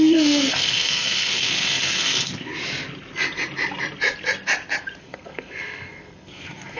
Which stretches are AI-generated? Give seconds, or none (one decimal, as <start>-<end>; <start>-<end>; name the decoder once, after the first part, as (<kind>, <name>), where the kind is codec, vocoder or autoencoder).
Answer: 0.0-2.5 (codec, SNAC); 5.0-6.8